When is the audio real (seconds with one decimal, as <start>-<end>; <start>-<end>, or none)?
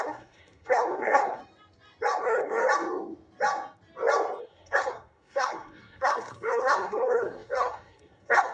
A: 1.4-2.2; 2.6-4.4